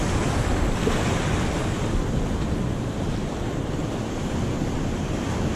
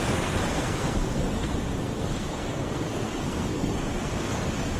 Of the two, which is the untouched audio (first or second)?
first